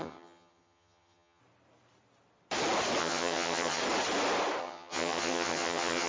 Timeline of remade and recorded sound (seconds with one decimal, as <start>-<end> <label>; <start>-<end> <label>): 0.0-1.4 remade; 1.4-3.0 recorded; 3.0-3.8 remade; 3.8-4.6 recorded; 4.6-6.1 remade